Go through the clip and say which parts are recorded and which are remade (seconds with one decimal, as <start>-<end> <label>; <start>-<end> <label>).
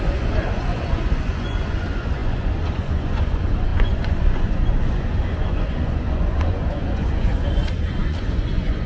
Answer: 0.0-8.9 remade